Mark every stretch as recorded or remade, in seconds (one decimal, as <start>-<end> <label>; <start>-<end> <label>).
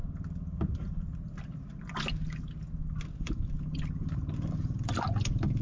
0.0-3.2 recorded; 3.2-5.6 remade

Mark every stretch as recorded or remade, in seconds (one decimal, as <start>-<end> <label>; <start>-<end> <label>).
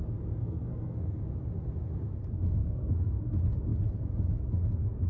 0.0-0.4 recorded; 0.4-1.2 remade; 1.2-2.6 recorded; 2.6-3.2 remade; 3.2-5.1 recorded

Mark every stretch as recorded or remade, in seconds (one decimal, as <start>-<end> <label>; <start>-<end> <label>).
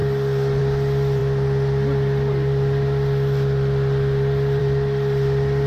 0.0-5.7 recorded